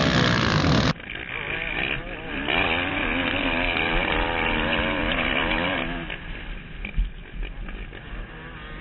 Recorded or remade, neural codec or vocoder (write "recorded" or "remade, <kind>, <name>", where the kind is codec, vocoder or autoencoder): recorded